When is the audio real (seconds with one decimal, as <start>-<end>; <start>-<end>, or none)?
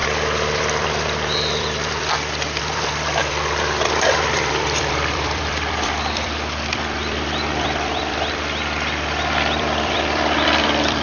none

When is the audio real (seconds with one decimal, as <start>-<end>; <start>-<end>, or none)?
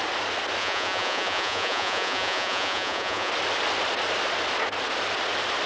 0.0-0.6; 3.3-5.7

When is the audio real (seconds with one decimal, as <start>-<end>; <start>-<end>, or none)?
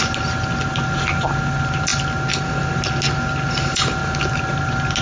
0.0-5.0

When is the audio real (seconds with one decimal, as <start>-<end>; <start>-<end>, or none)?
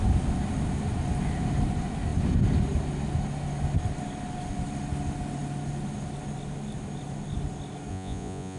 0.0-7.9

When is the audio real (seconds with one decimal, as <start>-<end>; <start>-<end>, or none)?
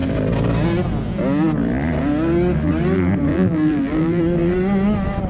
0.0-3.3; 4.2-5.3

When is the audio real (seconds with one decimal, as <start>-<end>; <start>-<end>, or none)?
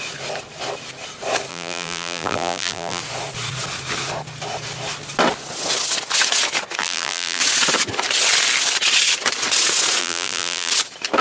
0.0-1.5; 3.0-6.8; 7.4-10.0; 10.7-11.2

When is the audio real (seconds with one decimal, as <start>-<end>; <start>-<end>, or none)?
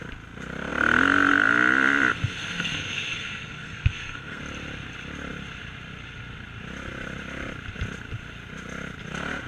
0.0-2.1; 4.4-9.5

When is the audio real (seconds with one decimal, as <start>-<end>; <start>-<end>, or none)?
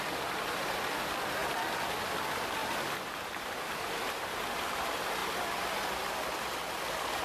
0.0-7.2